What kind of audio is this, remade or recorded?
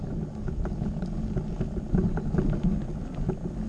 recorded